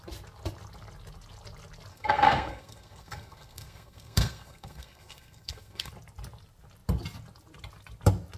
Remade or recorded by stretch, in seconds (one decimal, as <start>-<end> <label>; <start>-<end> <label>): 0.0-1.9 recorded; 1.9-5.9 remade; 5.9-8.4 recorded